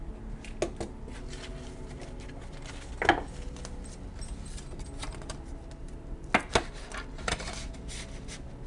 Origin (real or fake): real